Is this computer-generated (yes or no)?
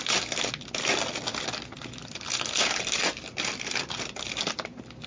no